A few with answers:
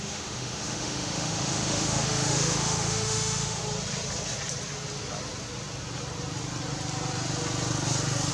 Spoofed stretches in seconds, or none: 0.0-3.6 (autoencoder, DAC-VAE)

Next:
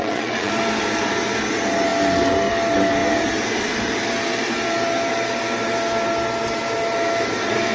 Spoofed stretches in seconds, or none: 0.0-0.5 (vocoder, Vocos)

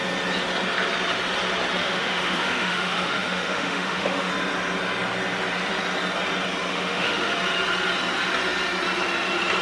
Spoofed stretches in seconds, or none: 1.8-4.3 (autoencoder, DAC-VAE); 6.7-7.3